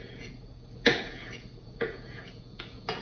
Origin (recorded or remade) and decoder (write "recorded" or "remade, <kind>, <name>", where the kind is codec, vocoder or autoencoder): remade, vocoder, Vocos